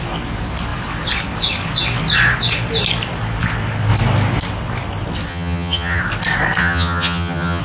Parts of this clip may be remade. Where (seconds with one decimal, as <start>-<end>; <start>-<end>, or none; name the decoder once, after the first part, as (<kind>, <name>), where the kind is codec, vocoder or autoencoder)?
5.3-6.0 (vocoder, HiFi-GAN); 6.6-7.6